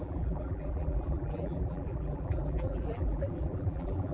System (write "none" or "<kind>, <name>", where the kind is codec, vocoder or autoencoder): vocoder, BigVGAN v2